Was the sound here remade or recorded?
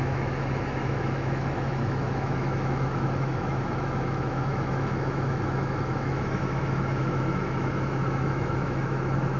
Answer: remade